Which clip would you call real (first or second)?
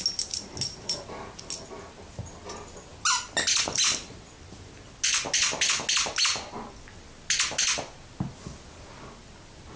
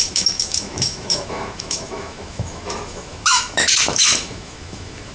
first